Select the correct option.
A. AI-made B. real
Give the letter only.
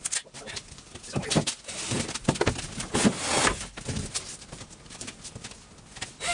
B